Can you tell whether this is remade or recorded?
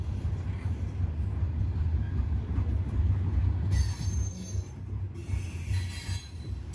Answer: recorded